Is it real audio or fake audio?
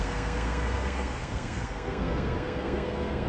fake